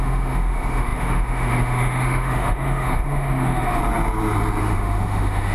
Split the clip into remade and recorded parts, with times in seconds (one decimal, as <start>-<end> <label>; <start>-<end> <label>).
0.0-3.8 remade; 3.8-4.6 recorded; 4.6-5.5 remade